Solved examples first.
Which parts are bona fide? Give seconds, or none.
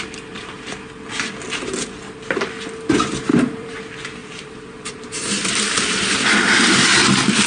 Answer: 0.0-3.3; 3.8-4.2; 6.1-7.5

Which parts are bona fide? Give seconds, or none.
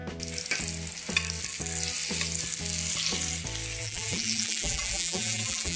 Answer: 0.0-3.8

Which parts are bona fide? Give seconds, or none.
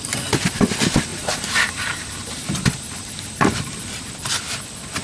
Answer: 0.0-1.1; 4.1-5.0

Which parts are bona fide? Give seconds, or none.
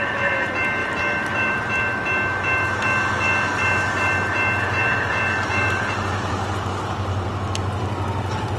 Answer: 0.0-0.8; 1.6-4.8; 7.5-8.6